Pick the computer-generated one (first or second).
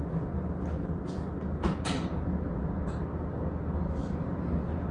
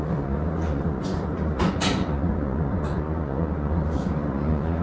second